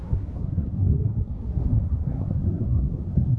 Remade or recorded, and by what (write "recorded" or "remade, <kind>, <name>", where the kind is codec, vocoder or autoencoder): remade, codec, SNAC